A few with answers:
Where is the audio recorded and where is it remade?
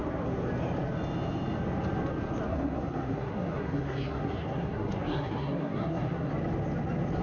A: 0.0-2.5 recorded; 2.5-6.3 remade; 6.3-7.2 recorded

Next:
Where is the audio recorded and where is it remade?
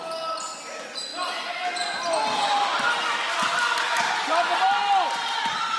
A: 0.0-5.8 recorded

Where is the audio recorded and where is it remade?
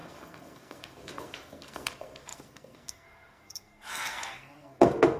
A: 0.0-5.2 remade